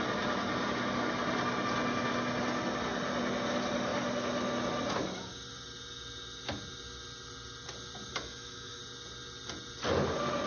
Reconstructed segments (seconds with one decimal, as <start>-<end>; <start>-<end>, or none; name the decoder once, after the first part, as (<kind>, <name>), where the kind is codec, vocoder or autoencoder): 8.1-8.8 (autoencoder, DAC-VAE)